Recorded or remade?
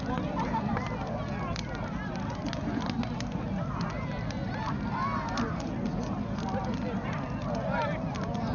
recorded